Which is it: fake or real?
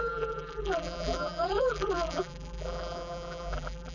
fake